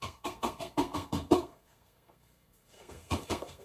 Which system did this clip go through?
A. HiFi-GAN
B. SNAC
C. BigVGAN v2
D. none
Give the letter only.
B